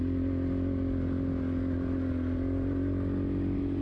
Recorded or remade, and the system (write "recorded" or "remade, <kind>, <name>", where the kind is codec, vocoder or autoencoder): recorded